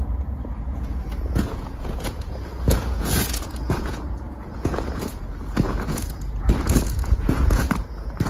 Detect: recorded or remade remade